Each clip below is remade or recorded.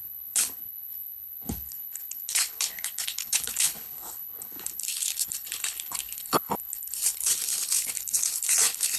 remade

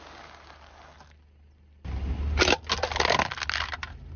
recorded